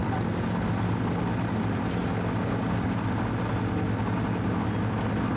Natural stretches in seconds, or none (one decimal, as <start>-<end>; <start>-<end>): 0.0-5.4